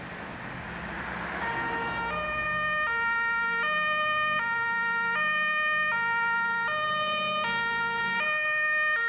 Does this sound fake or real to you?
real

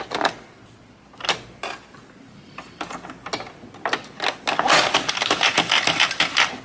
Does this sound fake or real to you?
real